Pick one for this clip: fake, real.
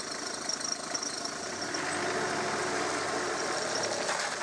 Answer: real